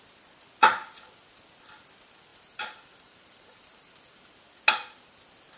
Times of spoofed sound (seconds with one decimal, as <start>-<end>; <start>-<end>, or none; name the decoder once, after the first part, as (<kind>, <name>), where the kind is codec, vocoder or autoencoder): 2.3-4.0 (vocoder, BigVGAN v2)